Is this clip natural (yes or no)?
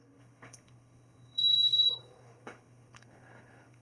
no